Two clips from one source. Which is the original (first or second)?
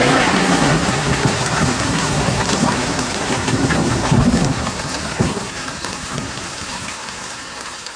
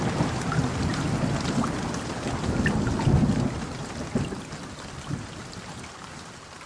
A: second